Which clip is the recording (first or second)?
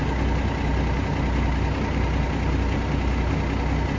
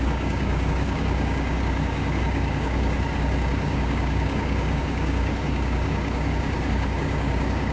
first